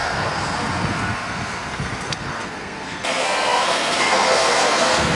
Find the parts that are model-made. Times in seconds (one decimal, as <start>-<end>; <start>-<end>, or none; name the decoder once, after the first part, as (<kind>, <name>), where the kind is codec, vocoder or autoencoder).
0.0-5.1 (codec, SNAC)